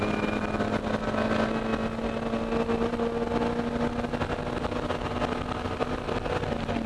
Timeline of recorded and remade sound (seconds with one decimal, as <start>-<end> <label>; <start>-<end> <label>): 0.0-6.9 recorded